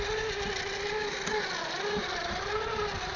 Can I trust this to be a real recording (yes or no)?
yes